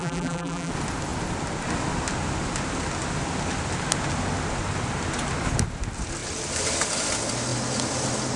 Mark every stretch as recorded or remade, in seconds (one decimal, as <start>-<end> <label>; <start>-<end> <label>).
0.0-0.7 remade; 0.7-8.4 recorded

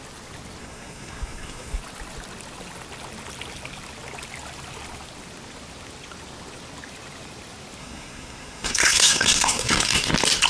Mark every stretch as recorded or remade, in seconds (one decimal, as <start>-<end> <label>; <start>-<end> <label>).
0.0-0.6 recorded; 0.6-1.8 remade; 1.8-7.8 recorded; 7.8-10.1 remade; 10.1-10.5 recorded

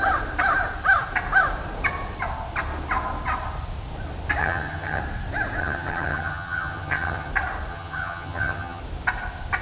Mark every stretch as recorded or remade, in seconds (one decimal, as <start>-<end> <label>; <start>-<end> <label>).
0.0-4.4 recorded; 4.4-5.0 remade; 5.0-5.6 recorded; 5.6-7.3 remade; 7.3-7.7 recorded; 7.7-8.8 remade; 8.8-9.6 recorded

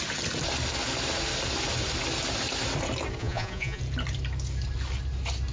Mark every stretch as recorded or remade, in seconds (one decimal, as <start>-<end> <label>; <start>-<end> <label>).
0.0-3.2 recorded; 3.2-3.8 remade; 3.8-5.5 recorded

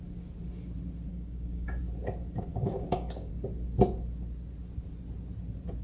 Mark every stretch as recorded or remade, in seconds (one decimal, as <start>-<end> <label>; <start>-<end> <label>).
0.0-1.1 recorded; 1.1-1.8 remade; 1.8-2.5 recorded; 2.5-3.3 remade; 3.3-5.8 recorded

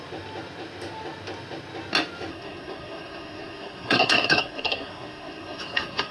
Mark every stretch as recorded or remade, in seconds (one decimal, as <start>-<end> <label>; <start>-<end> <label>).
0.0-2.3 recorded; 2.3-6.1 remade

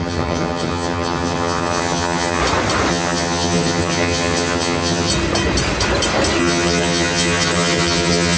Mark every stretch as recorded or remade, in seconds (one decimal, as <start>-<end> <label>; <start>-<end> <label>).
0.0-2.4 remade; 2.4-2.9 recorded; 2.9-5.1 remade; 5.1-6.4 recorded; 6.4-8.4 remade

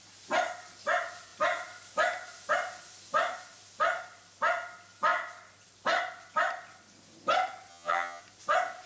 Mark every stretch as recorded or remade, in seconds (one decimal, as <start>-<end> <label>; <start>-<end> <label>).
0.0-7.7 recorded; 7.7-8.2 remade; 8.2-8.9 recorded